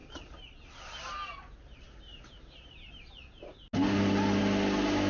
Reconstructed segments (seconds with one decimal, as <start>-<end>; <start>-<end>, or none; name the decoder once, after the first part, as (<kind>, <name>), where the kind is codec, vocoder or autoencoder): none

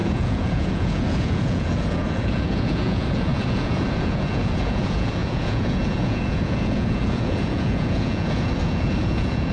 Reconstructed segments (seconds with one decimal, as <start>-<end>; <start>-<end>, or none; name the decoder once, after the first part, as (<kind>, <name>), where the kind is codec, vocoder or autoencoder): 0.0-9.5 (vocoder, Vocos)

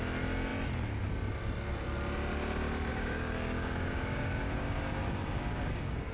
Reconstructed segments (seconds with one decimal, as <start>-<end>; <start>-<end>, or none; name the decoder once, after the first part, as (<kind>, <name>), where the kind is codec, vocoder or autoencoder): 2.9-6.1 (codec, DAC)

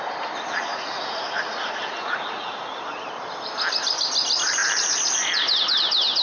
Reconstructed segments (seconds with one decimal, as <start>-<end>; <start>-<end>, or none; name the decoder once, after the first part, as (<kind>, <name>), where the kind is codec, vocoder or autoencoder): 0.7-2.8 (vocoder, Vocos)

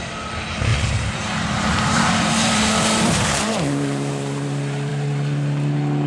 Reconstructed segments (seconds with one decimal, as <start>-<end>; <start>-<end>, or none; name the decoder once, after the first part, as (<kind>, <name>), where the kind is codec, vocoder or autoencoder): 0.7-4.1 (vocoder, BigVGAN v2)

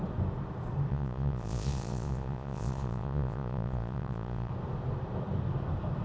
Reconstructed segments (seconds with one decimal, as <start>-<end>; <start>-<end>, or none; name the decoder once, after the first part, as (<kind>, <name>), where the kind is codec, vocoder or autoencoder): 0.9-4.5 (vocoder, Vocos)

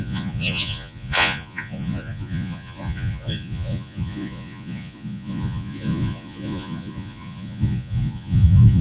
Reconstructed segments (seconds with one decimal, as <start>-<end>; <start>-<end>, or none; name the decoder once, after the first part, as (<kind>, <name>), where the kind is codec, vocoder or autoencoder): 0.0-8.8 (vocoder, Vocos)

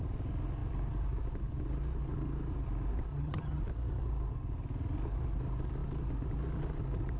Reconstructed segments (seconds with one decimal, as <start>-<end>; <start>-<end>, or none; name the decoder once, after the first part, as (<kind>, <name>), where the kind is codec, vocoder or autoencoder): 3.1-3.6 (vocoder, HiFi-GAN)